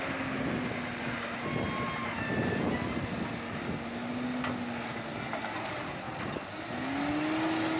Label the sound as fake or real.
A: real